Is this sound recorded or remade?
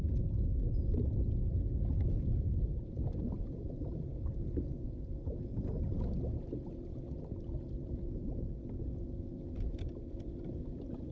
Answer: recorded